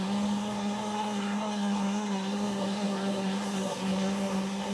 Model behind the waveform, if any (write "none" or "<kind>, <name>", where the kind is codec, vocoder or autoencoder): codec, SNAC